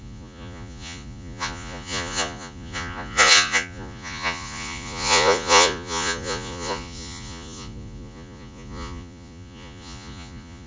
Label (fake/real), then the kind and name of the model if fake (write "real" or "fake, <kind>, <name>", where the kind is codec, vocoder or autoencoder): fake, vocoder, Vocos